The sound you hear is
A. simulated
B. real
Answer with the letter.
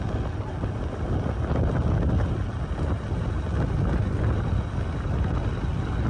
B